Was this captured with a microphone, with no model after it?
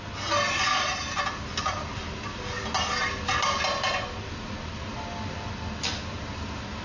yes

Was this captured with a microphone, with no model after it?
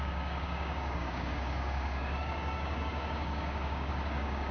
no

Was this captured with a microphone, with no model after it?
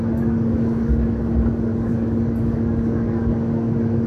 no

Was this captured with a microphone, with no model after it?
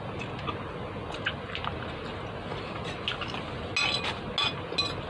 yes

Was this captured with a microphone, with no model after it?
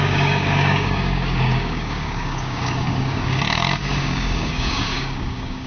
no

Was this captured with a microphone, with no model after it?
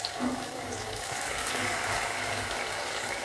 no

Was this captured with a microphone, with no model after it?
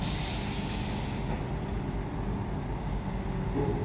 yes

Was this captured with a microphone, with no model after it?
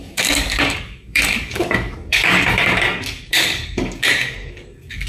no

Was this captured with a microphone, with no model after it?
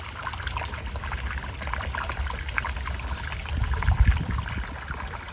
yes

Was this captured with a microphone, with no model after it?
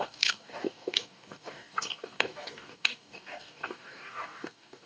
no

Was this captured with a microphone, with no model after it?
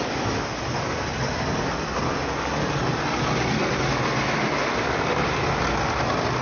yes